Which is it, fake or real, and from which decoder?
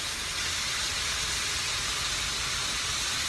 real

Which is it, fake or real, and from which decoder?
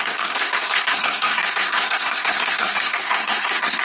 fake, codec, SNAC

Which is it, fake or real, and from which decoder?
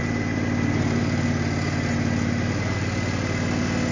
real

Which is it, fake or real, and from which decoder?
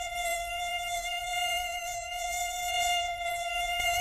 fake, vocoder, Vocos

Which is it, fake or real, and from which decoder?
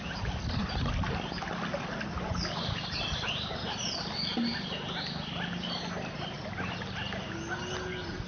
real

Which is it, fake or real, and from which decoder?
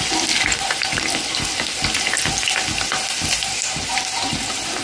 real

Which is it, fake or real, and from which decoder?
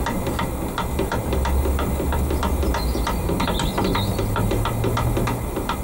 real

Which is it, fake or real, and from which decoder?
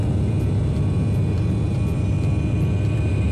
fake, vocoder, BigVGAN v2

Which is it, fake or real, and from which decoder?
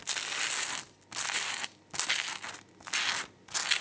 real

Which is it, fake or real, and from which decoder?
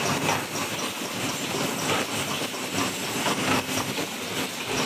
real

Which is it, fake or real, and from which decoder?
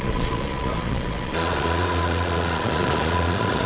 fake, vocoder, Vocos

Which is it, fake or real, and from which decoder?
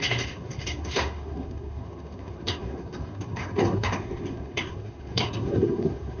fake, codec, SNAC